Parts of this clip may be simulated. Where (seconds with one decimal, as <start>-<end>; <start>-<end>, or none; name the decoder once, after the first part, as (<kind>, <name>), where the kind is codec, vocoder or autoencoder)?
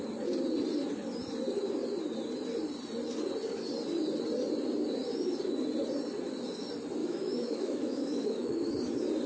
7.0-8.7 (autoencoder, DAC-VAE)